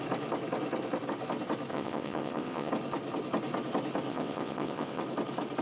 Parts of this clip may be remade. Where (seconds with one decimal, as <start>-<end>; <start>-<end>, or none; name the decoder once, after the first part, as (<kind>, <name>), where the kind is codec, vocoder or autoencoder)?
1.7-2.7 (vocoder, WaveNeXt); 4.1-5.0